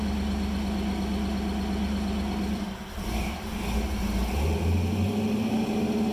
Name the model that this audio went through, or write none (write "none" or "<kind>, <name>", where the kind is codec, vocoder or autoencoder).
none